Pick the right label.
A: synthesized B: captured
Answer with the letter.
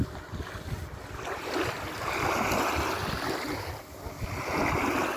B